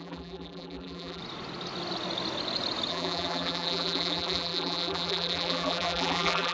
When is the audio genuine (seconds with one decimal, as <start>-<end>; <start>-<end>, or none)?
1.2-2.9

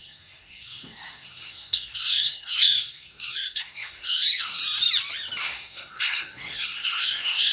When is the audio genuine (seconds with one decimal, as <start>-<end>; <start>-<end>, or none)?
4.6-5.4

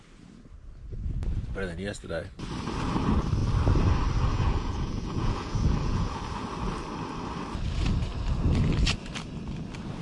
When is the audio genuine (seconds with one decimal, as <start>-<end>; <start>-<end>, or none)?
0.0-4.3; 6.2-10.0

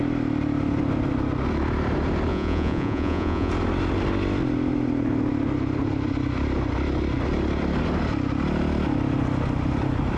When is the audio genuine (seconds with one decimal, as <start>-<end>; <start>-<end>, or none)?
0.0-2.3; 3.5-10.2

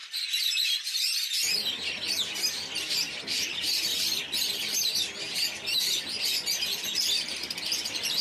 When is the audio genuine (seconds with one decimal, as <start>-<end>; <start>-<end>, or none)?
0.7-2.8; 4.2-8.2

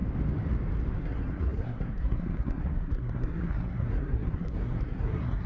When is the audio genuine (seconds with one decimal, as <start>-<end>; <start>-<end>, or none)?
0.0-1.0

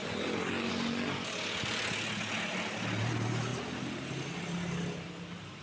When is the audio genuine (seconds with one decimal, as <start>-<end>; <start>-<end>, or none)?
0.0-5.6

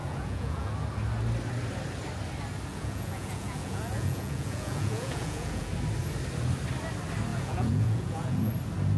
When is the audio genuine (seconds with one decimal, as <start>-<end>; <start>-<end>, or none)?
0.7-2.7; 5.7-7.3; 8.5-9.0